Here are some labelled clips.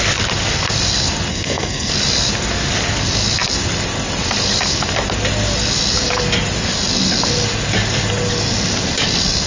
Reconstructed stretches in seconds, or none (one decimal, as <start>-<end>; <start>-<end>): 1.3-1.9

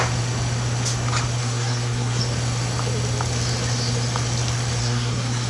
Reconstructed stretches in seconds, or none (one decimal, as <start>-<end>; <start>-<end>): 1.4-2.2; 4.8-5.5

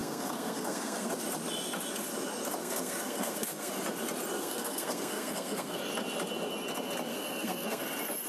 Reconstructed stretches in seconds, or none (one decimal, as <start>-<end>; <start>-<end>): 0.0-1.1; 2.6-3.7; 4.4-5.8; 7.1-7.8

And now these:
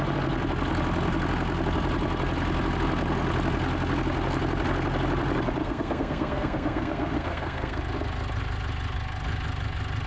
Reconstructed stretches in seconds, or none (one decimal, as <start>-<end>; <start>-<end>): 5.6-7.8